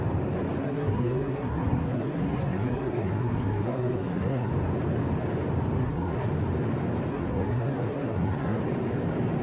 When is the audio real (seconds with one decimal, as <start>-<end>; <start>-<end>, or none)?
0.0-0.6; 4.5-5.8; 6.3-7.1; 8.6-9.4